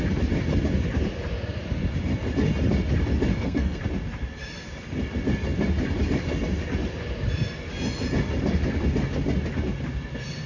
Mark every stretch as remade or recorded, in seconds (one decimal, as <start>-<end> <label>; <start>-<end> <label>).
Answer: 0.0-3.3 recorded; 3.3-3.8 remade; 3.8-10.5 recorded